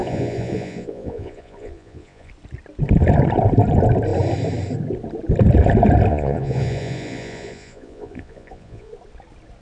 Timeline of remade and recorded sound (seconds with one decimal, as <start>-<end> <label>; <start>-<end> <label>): 0.0-2.3 remade; 2.3-6.1 recorded; 6.1-8.9 remade; 8.9-9.6 recorded